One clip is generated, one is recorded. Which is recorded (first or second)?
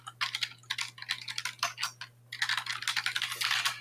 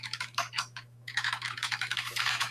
first